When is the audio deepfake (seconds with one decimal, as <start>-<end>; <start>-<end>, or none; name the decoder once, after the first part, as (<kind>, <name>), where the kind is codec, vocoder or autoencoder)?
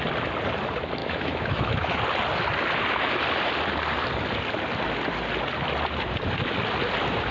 1.0-2.0 (autoencoder, DAC-VAE)